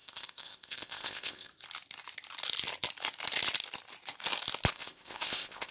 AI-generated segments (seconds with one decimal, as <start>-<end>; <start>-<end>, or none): 0.0-1.5; 4.7-5.7